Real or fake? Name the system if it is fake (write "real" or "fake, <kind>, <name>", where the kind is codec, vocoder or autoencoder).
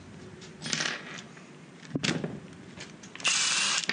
real